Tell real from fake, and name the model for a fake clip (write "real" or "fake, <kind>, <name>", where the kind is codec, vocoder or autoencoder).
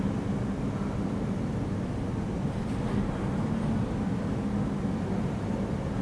real